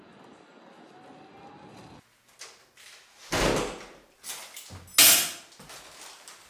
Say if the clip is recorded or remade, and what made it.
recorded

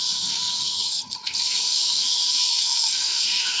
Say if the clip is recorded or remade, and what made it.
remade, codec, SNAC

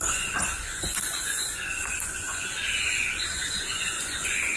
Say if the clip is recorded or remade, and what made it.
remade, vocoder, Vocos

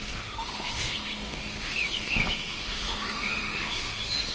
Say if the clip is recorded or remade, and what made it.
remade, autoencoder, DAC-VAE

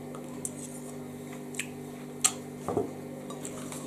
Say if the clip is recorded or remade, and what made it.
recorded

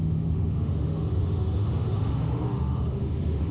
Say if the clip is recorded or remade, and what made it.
remade, autoencoder, DAC-VAE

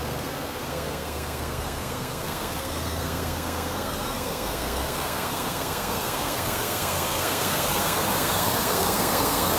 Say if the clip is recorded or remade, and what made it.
remade, codec, SNAC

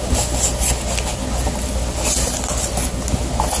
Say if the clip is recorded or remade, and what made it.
recorded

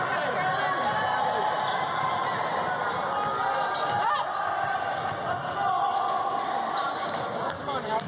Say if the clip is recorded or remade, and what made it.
recorded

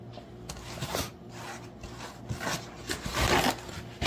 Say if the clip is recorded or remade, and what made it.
recorded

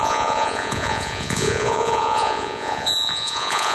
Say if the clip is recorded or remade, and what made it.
remade, vocoder, Vocos